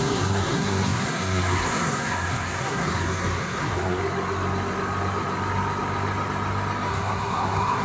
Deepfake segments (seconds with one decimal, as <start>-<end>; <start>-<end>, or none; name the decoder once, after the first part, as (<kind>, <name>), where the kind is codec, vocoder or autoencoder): 0.0-4.0 (codec, SNAC); 6.9-7.8